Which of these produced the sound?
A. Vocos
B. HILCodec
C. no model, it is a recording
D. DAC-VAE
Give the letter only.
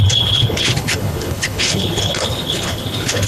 B